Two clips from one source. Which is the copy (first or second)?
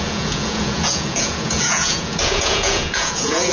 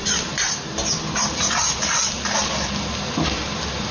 first